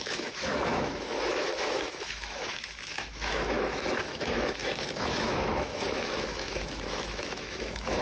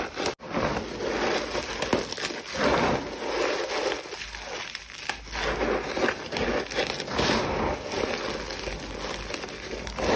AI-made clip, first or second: first